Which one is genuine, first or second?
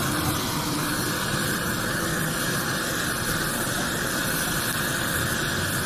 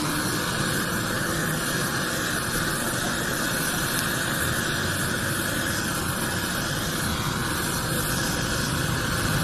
second